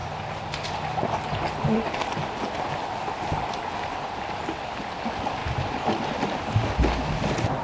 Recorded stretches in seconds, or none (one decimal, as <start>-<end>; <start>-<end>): 0.0-7.6